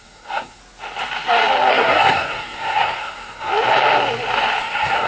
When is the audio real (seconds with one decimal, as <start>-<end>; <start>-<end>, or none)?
0.6-1.7; 3.5-4.6